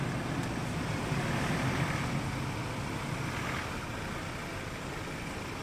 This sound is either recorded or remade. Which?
recorded